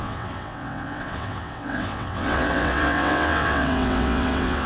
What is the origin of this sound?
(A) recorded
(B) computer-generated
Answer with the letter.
B